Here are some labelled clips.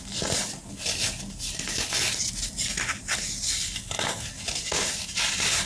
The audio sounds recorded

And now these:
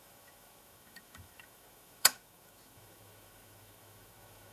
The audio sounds remade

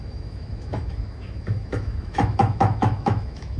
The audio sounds remade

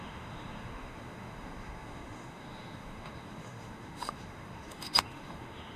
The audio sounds remade